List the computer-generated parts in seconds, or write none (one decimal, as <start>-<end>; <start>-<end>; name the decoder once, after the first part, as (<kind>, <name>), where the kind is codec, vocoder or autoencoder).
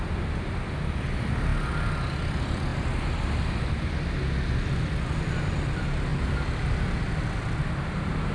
none